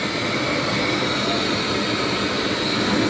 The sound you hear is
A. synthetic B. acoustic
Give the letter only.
B